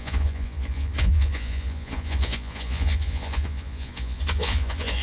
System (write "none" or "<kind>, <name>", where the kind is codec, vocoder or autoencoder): vocoder, Vocos